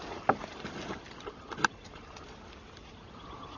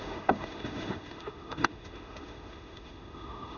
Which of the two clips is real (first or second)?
first